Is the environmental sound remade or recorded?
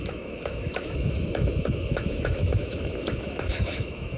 remade